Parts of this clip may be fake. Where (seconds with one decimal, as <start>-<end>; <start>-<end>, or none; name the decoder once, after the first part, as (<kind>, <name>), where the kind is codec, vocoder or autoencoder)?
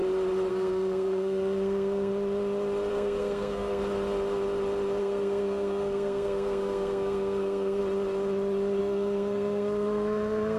0.5-2.1 (codec, SNAC); 2.9-3.8; 5.0-7.8; 8.8-10.6